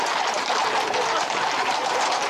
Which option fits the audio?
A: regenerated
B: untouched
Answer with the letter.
B